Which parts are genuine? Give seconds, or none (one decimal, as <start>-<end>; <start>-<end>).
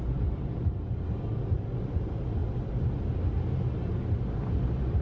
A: 0.0-5.0